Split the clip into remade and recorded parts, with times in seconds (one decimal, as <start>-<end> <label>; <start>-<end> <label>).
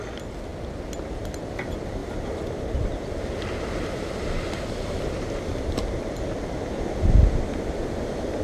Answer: 0.0-8.4 recorded